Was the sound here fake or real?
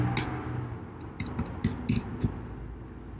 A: real